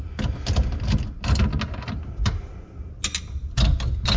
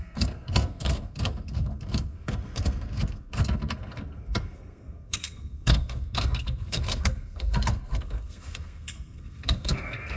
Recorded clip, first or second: first